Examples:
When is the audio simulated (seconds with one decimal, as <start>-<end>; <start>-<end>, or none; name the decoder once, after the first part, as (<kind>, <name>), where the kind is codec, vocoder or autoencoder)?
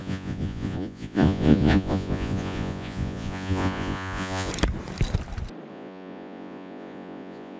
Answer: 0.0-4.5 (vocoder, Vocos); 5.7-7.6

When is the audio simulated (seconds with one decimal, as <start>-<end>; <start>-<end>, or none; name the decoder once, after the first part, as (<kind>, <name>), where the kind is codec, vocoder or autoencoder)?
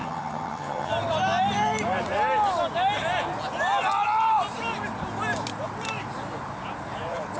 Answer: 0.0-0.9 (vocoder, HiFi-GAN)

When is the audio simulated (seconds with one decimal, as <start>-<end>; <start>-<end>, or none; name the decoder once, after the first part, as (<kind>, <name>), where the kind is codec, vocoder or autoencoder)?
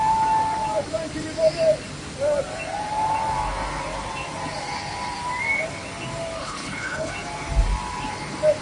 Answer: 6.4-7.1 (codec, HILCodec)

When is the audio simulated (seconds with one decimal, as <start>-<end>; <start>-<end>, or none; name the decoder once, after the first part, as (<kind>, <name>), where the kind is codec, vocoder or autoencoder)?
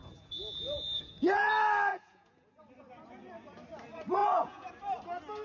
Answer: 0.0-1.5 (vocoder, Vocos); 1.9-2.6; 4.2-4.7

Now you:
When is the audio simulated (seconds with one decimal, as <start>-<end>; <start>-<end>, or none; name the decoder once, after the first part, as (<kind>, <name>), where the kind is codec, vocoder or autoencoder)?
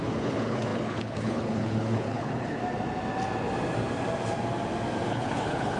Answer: 0.0-2.6 (codec, HILCodec); 5.1-5.8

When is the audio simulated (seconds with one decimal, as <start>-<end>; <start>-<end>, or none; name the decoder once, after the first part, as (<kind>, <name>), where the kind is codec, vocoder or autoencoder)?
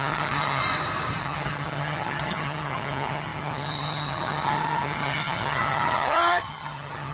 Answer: 0.0-0.6 (vocoder, HiFi-GAN); 1.2-7.1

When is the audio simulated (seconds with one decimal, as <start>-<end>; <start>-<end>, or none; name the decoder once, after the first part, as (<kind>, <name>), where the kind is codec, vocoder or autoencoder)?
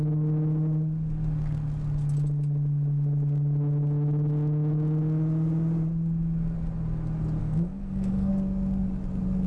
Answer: 7.4-8.3 (codec, SNAC)